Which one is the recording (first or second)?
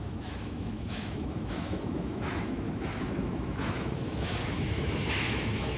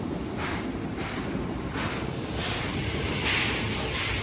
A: second